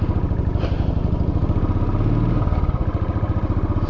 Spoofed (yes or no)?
no